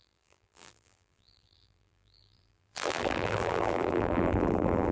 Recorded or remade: remade